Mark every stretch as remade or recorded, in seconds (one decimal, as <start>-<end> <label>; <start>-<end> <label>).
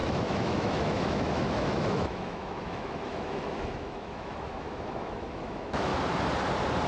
0.0-5.9 remade; 5.9-6.9 recorded